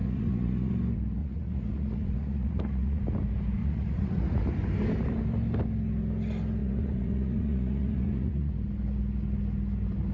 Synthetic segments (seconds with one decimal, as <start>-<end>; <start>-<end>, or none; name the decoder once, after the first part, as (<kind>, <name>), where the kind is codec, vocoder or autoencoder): 0.0-0.7 (vocoder, Vocos); 1.2-3.0; 3.6-4.4; 6.6-8.5